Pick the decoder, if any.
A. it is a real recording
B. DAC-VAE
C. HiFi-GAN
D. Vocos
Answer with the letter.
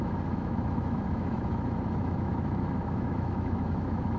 B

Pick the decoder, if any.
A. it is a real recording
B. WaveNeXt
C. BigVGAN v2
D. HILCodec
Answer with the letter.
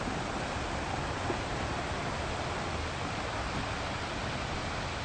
A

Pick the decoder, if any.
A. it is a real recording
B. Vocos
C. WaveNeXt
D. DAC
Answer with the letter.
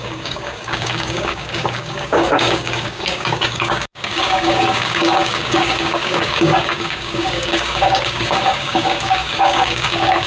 D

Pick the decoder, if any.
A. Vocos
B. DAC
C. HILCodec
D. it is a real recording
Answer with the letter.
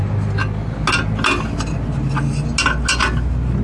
D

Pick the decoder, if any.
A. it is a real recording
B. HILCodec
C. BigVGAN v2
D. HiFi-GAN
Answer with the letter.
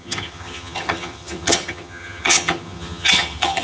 D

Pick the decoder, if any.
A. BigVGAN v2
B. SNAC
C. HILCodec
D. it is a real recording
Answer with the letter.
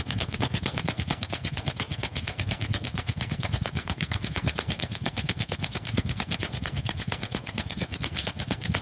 B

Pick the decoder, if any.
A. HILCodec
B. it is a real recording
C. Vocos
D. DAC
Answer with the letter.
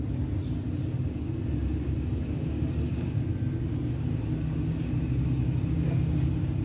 B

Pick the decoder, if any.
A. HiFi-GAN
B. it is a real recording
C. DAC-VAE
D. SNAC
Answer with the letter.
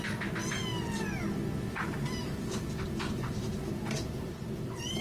B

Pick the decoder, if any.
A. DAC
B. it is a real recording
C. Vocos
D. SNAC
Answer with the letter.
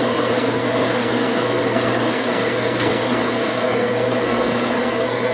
D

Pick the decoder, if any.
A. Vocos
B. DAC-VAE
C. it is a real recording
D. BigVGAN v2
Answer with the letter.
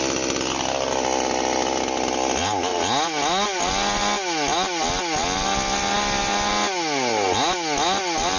C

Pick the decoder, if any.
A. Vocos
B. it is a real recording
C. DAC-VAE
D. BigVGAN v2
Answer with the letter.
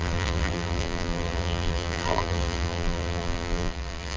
D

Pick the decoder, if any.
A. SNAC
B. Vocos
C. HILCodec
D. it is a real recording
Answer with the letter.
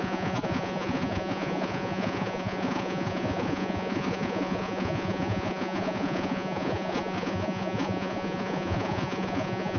B